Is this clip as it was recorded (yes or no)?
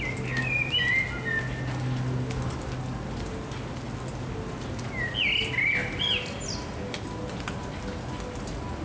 yes